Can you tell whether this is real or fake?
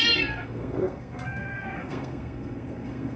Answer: fake